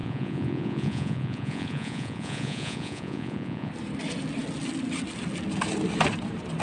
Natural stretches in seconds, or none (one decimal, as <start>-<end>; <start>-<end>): 3.7-6.6